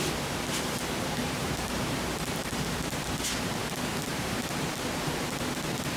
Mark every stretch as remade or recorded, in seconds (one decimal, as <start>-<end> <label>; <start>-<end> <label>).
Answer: 0.0-1.2 recorded; 1.2-3.0 remade; 3.0-4.1 recorded; 4.1-4.9 remade; 4.9-6.0 recorded